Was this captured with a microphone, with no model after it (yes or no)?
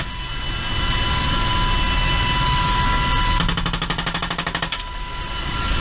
yes